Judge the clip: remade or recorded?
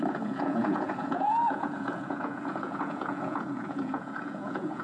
remade